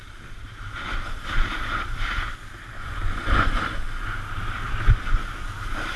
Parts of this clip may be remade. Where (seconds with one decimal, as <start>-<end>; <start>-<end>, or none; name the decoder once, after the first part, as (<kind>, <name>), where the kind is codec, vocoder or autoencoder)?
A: 2.8-3.6 (vocoder, Vocos)